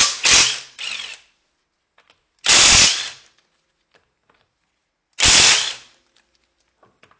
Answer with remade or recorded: recorded